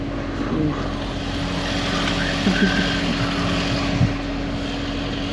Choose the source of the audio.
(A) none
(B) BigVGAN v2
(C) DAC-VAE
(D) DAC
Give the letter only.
A